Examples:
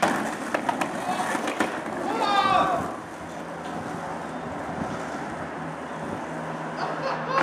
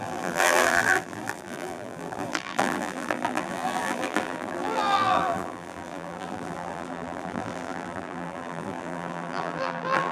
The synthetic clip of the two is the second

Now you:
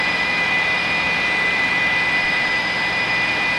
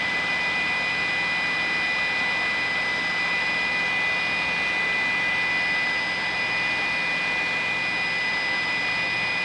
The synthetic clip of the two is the first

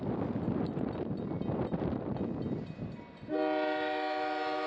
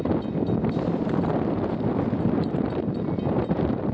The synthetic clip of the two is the second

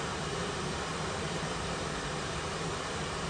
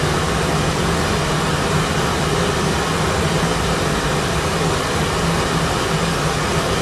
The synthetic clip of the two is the first